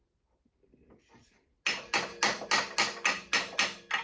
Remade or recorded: recorded